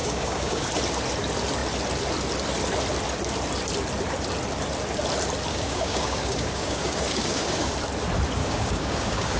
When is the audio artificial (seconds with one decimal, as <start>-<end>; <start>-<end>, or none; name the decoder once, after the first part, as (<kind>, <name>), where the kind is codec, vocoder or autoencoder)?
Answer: 0.0-0.7 (codec, DAC); 5.5-7.7; 8.4-9.4